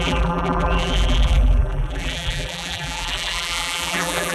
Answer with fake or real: fake